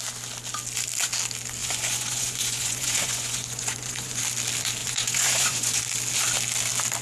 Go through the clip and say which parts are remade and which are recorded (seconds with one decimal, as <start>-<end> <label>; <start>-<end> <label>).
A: 0.0-1.6 recorded; 1.6-4.2 remade; 4.2-4.8 recorded; 4.8-5.8 remade; 5.8-7.0 recorded